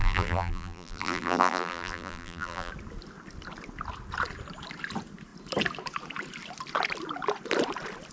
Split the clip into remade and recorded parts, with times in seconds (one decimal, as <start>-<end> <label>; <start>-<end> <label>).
0.0-2.7 remade; 2.7-8.1 recorded